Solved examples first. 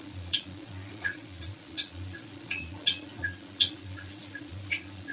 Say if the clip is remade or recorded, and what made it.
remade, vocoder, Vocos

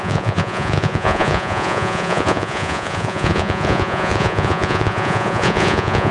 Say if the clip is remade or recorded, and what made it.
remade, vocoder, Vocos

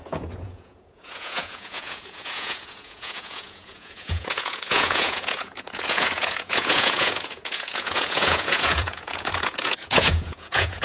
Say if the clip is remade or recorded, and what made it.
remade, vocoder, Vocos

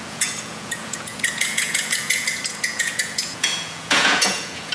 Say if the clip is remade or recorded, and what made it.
remade, vocoder, Vocos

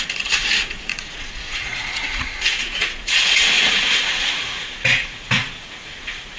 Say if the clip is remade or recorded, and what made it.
remade, vocoder, Vocos